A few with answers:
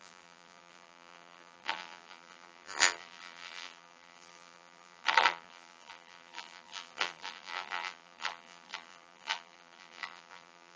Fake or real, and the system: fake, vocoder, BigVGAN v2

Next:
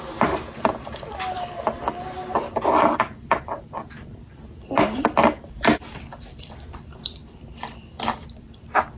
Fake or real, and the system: fake, vocoder, BigVGAN v2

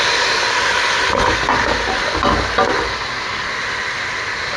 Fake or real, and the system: real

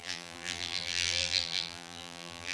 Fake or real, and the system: fake, vocoder, BigVGAN v2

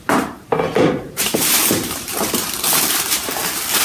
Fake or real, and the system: fake, vocoder, BigVGAN v2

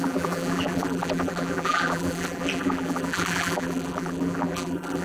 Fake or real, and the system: fake, vocoder, BigVGAN v2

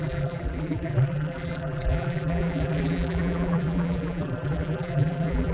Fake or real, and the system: fake, vocoder, BigVGAN v2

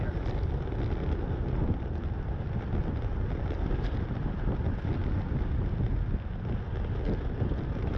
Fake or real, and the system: real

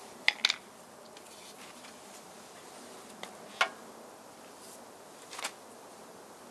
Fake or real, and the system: real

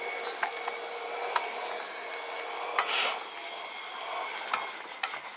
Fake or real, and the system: real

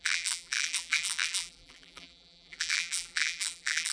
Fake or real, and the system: fake, vocoder, BigVGAN v2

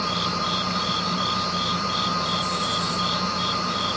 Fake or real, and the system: fake, vocoder, BigVGAN v2